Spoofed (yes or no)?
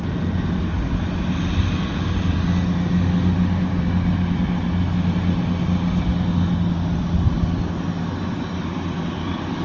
no